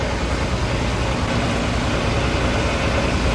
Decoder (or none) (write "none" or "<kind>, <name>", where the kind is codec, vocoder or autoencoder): none